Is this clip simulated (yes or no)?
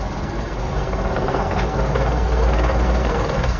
yes